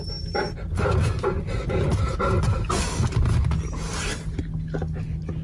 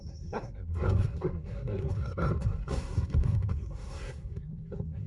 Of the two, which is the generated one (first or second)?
second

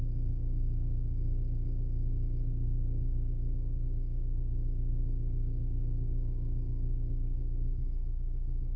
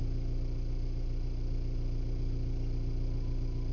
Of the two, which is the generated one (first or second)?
first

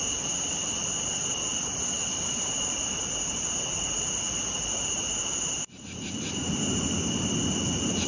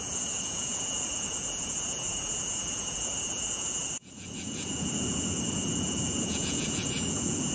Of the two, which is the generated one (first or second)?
second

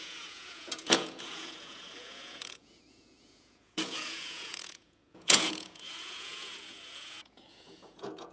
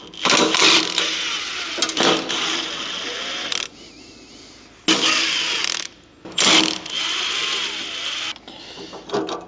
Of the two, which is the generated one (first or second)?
first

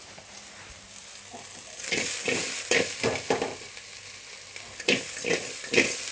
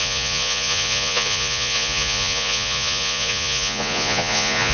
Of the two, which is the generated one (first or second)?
second